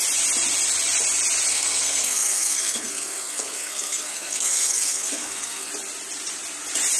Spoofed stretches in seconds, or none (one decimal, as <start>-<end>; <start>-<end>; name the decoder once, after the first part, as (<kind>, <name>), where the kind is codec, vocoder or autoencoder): 1.5-5.7 (codec, SNAC)